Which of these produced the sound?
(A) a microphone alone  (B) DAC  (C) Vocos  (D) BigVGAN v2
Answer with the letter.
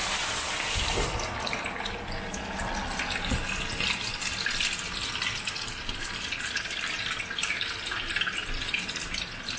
A